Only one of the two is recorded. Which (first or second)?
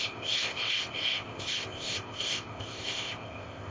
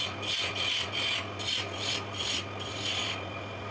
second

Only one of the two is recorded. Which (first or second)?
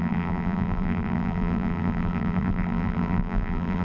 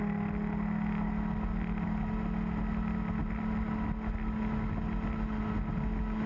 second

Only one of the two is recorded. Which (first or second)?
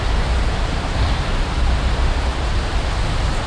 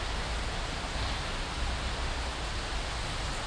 second